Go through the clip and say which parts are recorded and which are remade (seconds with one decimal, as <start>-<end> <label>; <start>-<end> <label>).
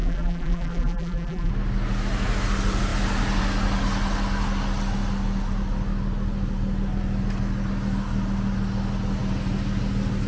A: 0.0-1.5 remade; 1.5-10.3 recorded